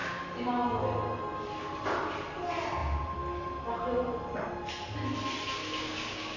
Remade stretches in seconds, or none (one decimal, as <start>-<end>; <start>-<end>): 5.6-6.4